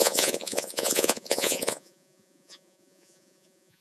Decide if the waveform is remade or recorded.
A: remade